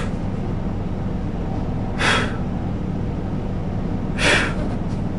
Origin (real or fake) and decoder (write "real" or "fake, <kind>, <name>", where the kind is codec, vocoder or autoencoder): real